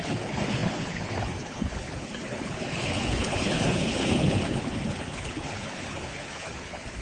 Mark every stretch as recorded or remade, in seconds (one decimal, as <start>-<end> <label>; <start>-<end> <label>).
0.0-7.0 remade